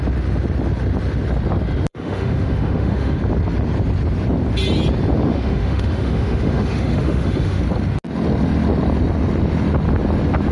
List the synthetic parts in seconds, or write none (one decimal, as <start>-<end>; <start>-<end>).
1.9-3.2; 5.3-7.6